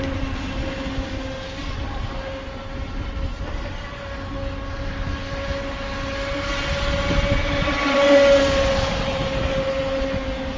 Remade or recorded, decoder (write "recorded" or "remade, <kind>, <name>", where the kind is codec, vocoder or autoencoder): recorded